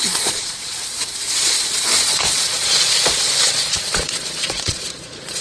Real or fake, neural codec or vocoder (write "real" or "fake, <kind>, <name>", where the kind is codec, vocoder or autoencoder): fake, vocoder, Vocos